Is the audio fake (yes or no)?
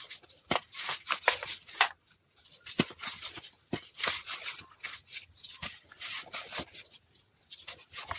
no